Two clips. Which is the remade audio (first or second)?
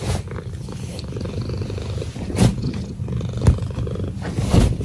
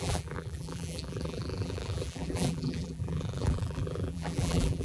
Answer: second